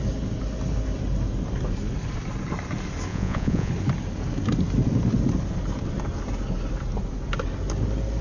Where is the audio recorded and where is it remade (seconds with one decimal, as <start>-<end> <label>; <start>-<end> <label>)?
0.0-3.1 recorded; 3.1-3.7 remade; 3.7-8.2 recorded